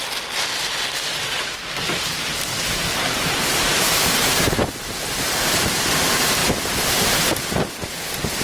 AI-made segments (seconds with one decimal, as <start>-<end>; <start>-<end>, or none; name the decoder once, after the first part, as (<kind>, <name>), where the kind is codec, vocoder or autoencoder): 1.1-6.0 (vocoder, BigVGAN v2)